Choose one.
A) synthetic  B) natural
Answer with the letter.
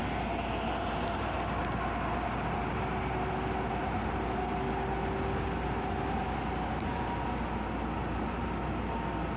B